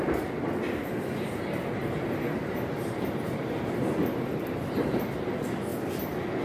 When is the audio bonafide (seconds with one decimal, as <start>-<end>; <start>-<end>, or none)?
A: 0.0-4.0; 4.9-6.4